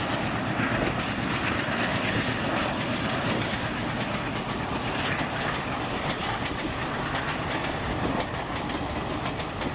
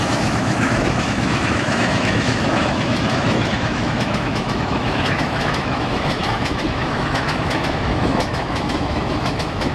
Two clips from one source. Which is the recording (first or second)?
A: first